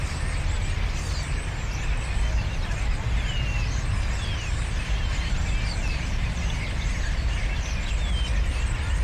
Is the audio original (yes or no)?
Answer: yes